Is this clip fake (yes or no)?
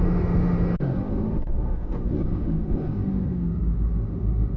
yes